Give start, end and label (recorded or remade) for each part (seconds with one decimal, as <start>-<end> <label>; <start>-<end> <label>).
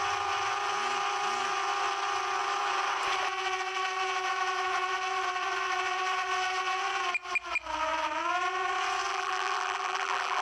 0.0-9.1 recorded; 9.1-10.4 remade